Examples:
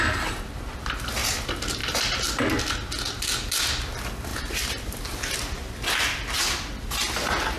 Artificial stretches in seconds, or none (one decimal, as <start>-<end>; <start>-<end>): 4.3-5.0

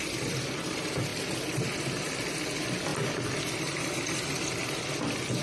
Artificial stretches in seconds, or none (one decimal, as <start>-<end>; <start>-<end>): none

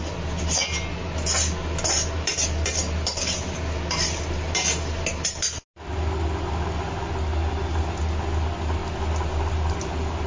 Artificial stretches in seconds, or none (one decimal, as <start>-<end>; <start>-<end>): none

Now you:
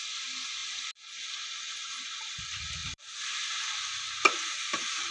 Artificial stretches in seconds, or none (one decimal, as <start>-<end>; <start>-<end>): 2.8-5.1